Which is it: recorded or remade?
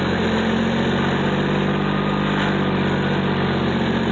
recorded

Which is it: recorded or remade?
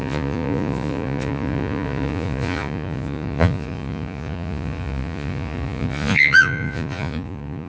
remade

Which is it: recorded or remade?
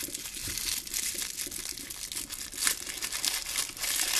recorded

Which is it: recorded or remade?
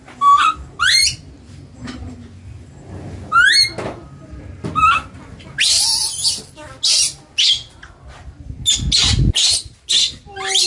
recorded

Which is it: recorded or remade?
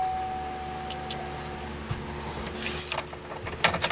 recorded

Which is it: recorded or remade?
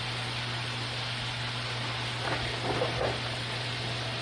recorded